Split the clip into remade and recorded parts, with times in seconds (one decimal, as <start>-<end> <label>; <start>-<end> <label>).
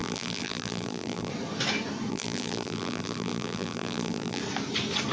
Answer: 0.0-1.3 remade; 1.3-2.1 recorded; 2.1-4.4 remade; 4.4-5.1 recorded